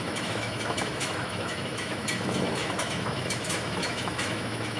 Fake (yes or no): yes